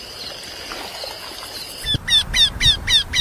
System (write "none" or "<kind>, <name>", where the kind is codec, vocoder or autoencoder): none